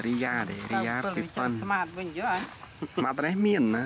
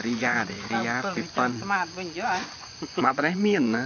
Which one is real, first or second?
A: first